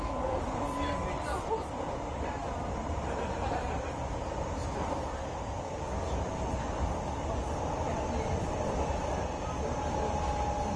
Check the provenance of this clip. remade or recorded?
recorded